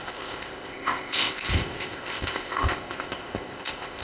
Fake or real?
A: fake